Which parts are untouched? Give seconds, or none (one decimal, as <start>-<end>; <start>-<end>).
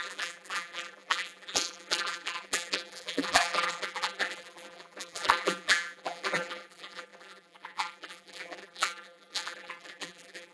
none